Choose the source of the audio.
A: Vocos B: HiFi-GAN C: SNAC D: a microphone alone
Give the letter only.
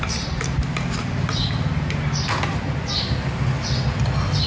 D